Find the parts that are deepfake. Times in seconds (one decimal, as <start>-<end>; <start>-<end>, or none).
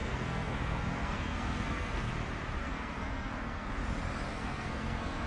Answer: 0.0-2.1; 2.6-3.7; 4.3-5.3